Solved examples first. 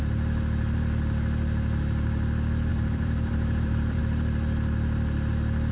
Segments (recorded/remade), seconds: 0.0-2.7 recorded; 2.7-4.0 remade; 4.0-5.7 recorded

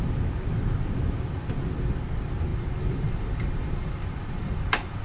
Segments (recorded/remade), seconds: 0.0-2.5 recorded; 2.5-5.0 remade